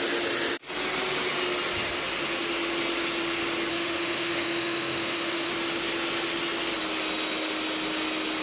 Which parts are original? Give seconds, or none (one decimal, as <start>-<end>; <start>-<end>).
0.0-3.7; 5.5-8.4